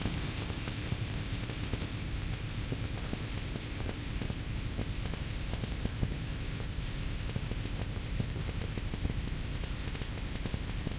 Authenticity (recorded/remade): remade